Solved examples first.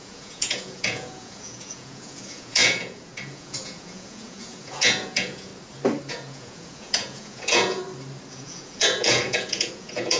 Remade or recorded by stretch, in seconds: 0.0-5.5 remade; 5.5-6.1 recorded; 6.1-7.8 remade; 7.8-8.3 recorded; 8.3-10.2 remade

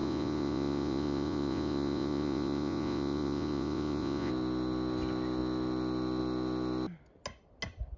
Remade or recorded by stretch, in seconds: 0.0-4.3 remade; 4.3-8.0 recorded

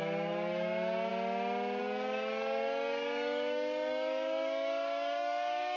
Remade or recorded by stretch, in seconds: 0.0-1.1 remade; 1.1-1.8 recorded; 1.8-5.8 remade

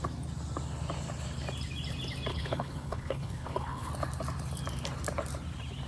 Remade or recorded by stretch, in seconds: 0.0-2.3 recorded; 2.3-3.9 remade; 3.9-5.9 recorded

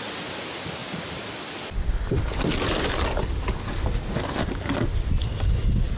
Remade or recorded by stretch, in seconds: 0.0-6.0 recorded

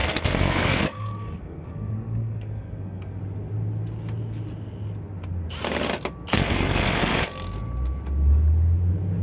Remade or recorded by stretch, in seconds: 0.0-3.2 remade; 3.2-6.3 recorded; 6.3-7.2 remade; 7.2-9.2 recorded

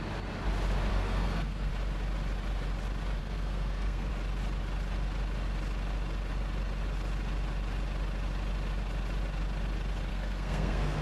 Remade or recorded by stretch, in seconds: 0.0-0.9 recorded; 0.9-1.7 remade; 1.7-3.2 recorded; 3.2-4.1 remade; 4.1-10.1 recorded; 10.1-11.0 remade